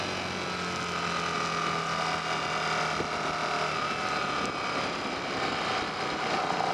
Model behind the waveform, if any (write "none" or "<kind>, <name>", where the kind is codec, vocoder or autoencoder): none